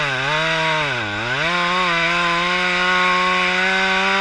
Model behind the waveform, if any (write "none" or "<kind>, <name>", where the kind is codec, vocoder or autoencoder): none